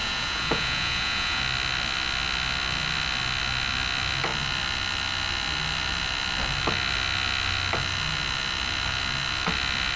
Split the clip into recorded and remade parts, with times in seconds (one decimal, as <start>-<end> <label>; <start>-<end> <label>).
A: 0.0-1.4 remade; 1.4-10.0 recorded